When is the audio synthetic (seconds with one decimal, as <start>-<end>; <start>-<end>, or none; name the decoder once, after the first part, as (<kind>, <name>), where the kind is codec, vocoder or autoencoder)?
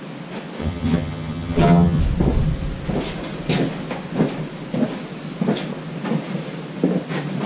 0.6-2.0 (vocoder, HiFi-GAN)